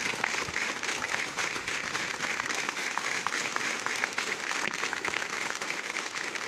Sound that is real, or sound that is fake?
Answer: fake